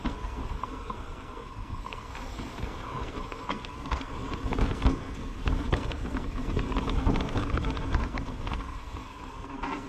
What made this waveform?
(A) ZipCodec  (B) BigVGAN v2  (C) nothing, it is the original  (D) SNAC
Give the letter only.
D